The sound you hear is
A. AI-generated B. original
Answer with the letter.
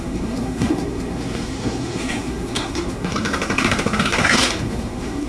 A